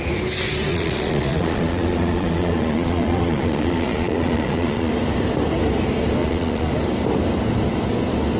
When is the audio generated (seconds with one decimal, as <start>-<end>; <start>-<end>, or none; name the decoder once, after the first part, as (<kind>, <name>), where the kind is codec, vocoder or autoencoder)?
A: 0.7-4.9 (vocoder, Vocos); 6.2-6.7